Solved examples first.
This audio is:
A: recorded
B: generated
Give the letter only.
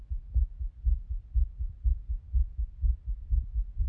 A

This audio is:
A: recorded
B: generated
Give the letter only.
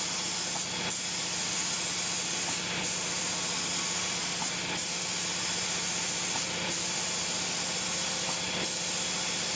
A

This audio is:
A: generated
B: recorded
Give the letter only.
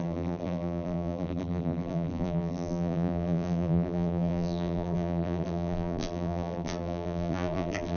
A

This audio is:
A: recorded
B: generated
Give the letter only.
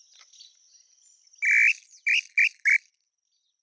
A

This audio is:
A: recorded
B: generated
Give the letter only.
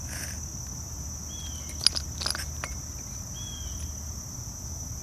A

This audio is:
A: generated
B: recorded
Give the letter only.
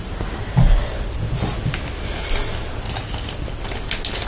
B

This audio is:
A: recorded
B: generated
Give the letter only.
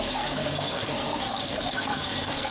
B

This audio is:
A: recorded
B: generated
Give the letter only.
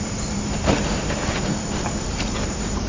B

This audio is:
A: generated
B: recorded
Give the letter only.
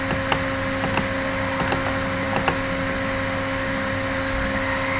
B